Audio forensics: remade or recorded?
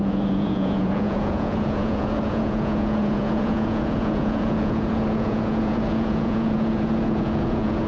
remade